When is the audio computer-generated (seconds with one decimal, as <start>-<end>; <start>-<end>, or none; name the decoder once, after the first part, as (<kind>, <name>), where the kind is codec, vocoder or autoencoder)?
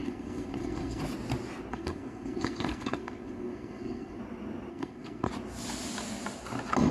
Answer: 0.0-1.0 (codec, SNAC); 1.7-4.2; 4.7-5.3